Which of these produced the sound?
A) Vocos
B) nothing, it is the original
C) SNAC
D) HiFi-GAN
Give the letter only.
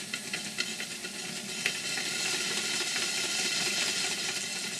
B